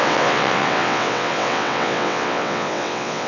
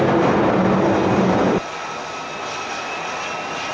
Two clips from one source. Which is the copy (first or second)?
first